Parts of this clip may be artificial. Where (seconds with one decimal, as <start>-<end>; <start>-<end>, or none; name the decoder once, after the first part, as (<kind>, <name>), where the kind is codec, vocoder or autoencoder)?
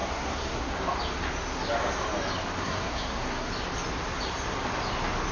0.0-0.7 (codec, SNAC); 2.6-3.5